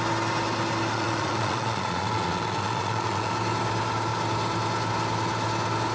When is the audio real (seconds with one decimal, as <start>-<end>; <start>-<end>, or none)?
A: 0.0-0.9; 3.3-5.9